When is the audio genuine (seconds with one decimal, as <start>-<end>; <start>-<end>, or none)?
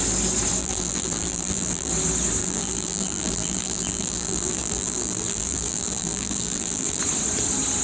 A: 0.0-0.6; 1.9-2.4; 7.0-7.8